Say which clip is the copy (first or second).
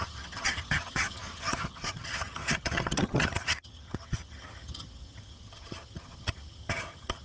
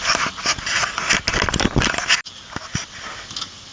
first